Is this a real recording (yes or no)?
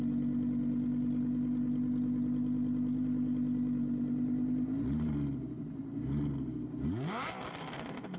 yes